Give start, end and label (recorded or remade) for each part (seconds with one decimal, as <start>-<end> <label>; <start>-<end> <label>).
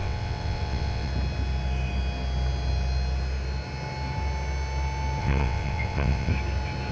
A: 0.0-1.1 remade; 1.1-5.2 recorded; 5.2-6.3 remade; 6.3-6.9 recorded